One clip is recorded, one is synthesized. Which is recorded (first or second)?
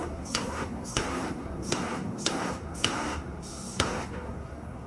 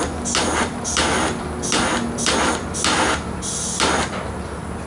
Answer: second